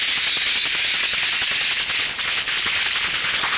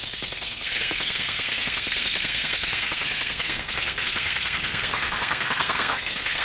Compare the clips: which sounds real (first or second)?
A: first